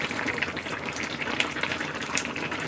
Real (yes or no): no